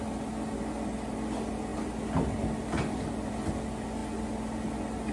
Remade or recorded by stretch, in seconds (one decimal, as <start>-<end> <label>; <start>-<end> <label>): 0.0-5.1 recorded

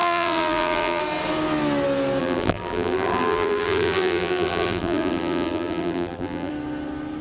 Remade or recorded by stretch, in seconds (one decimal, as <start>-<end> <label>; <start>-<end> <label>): 0.0-1.0 remade; 1.0-2.2 recorded; 2.2-6.5 remade; 6.5-7.2 recorded